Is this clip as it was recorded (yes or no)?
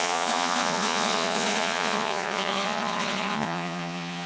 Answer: no